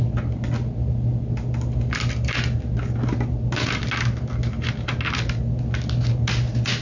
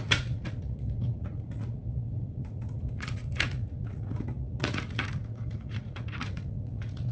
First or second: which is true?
first